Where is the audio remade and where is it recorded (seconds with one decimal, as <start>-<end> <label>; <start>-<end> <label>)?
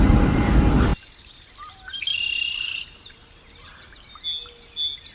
0.0-0.9 recorded; 0.9-1.5 remade; 1.5-2.1 recorded; 2.1-4.1 remade; 4.1-5.1 recorded